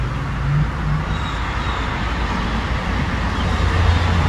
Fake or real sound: real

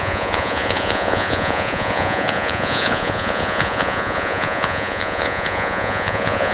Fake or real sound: fake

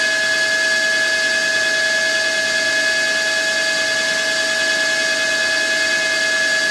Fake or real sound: real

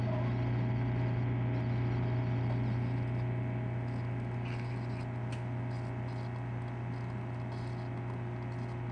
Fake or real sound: real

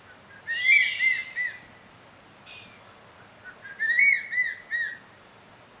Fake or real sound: real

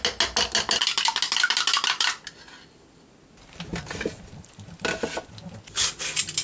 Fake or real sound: real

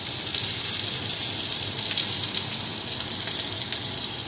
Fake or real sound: real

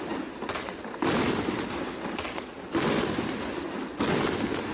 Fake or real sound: real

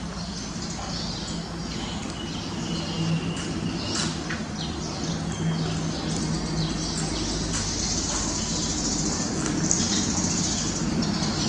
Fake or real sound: real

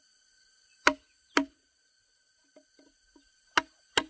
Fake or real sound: real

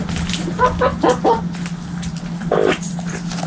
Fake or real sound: real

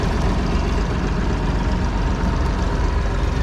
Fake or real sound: real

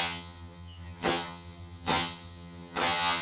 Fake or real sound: fake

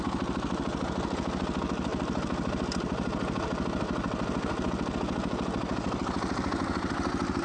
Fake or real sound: real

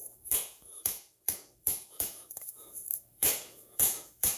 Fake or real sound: fake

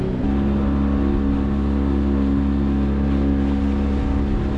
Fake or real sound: real